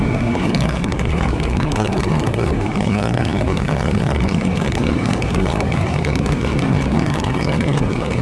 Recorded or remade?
remade